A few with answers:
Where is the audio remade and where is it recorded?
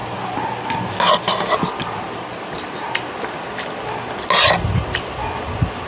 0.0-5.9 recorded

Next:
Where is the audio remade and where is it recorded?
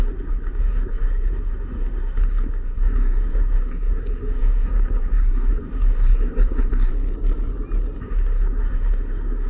0.0-6.9 remade; 6.9-8.0 recorded; 8.0-9.5 remade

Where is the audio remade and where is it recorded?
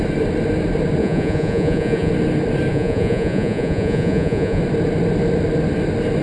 0.0-1.0 recorded; 1.0-2.1 remade; 2.1-2.7 recorded; 2.7-4.6 remade; 4.6-6.2 recorded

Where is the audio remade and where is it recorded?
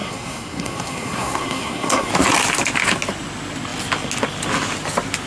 0.0-2.1 remade; 2.1-5.3 recorded